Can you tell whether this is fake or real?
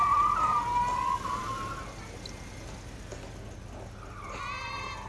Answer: real